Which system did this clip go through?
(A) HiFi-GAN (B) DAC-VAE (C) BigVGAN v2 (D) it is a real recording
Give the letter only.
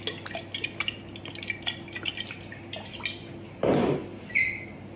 D